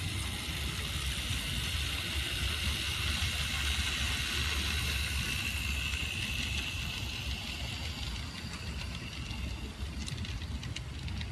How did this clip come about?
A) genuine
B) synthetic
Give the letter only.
A